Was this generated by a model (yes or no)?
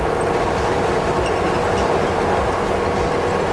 no